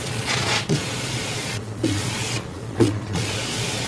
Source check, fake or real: fake